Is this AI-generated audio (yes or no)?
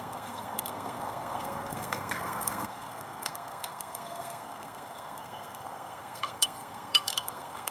yes